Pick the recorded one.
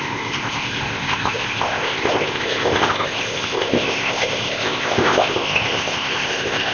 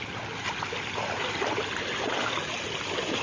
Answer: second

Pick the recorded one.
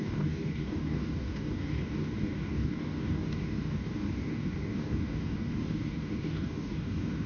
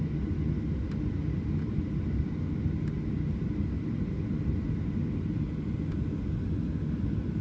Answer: second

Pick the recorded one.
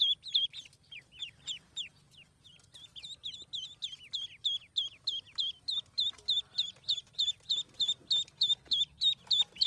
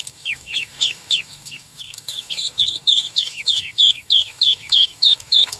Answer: first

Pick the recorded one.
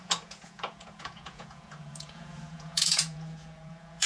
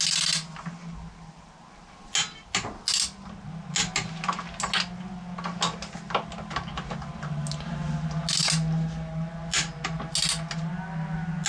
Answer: second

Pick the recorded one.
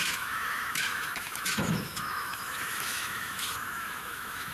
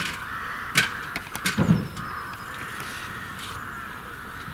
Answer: second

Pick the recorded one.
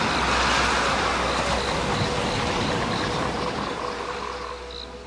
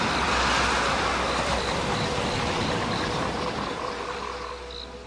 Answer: first